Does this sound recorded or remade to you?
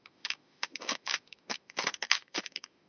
remade